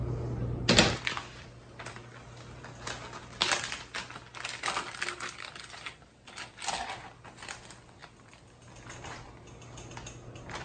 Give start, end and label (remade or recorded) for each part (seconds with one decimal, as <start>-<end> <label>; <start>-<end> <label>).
0.0-10.6 recorded

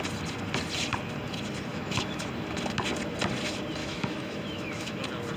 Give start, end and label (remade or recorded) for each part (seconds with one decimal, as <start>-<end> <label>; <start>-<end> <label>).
0.0-1.7 recorded; 1.7-2.3 remade; 2.3-3.8 recorded; 3.8-5.0 remade; 5.0-5.4 recorded

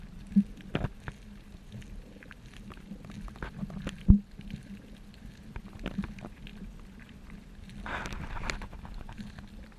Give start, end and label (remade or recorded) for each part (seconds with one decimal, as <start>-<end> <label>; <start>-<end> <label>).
0.0-0.9 remade; 0.9-5.7 recorded; 5.7-9.8 remade

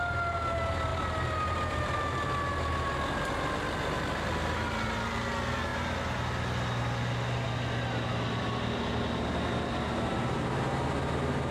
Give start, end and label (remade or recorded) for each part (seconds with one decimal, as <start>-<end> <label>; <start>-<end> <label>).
0.0-11.5 recorded